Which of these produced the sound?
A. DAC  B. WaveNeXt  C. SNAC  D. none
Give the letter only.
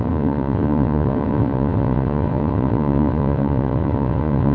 B